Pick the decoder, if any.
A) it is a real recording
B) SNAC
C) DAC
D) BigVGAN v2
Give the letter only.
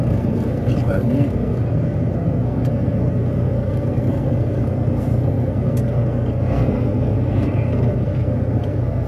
B